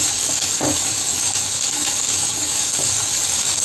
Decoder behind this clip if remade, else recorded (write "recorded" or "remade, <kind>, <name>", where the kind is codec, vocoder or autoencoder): remade, codec, DAC